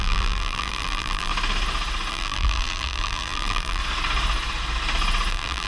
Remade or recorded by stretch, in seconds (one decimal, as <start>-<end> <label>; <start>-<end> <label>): 0.0-1.3 remade; 1.3-2.1 recorded; 2.1-3.8 remade; 3.8-5.3 recorded; 5.3-5.7 remade